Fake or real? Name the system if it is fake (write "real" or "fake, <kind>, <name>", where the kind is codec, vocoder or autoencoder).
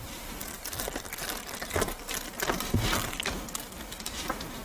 real